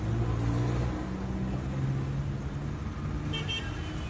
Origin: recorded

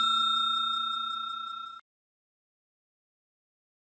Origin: recorded